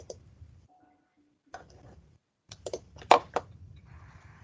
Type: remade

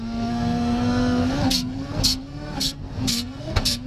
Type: remade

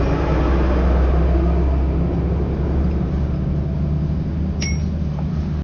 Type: recorded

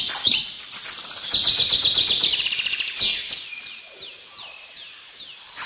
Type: recorded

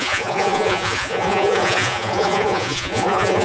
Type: remade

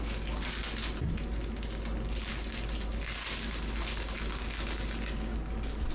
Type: recorded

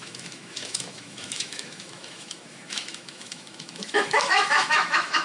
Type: remade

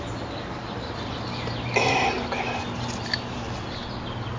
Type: recorded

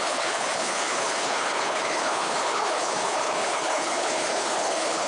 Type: remade